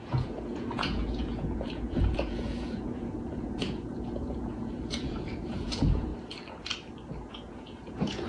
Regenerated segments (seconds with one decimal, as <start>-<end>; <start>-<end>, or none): 0.0-6.1; 7.3-8.3